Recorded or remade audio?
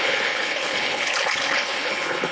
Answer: remade